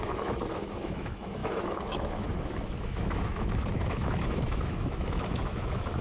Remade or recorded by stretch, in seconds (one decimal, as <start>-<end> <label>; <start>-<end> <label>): 0.0-6.0 remade